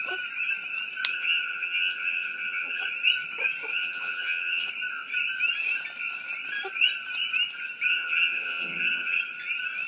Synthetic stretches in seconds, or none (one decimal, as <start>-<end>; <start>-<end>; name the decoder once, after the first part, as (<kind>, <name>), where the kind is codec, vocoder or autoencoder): 1.1-2.9 (vocoder, HiFi-GAN); 3.7-4.7; 7.9-9.2